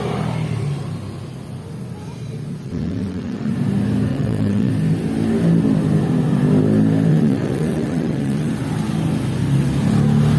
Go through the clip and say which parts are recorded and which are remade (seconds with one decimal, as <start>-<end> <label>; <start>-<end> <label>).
0.0-2.6 recorded; 2.6-3.5 remade; 3.5-4.1 recorded; 4.1-4.7 remade; 4.7-7.1 recorded; 7.1-8.5 remade; 8.5-10.4 recorded